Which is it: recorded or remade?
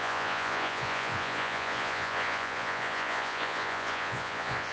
remade